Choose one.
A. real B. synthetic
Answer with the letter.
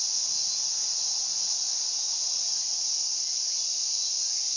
A